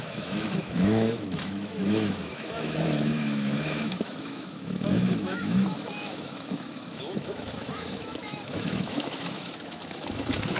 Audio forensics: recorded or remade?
remade